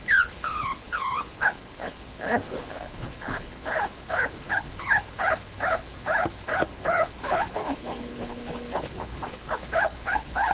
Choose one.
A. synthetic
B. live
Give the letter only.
A